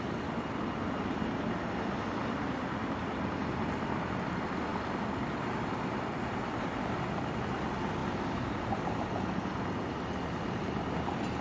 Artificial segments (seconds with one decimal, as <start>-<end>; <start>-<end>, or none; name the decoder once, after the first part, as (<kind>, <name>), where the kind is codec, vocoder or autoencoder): none